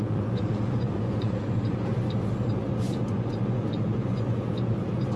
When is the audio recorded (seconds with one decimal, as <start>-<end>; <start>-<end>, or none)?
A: 1.9-2.5